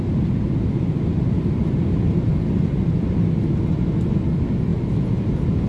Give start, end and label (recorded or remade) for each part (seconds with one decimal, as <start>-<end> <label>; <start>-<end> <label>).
0.0-1.1 recorded; 1.1-2.3 remade; 2.3-5.7 recorded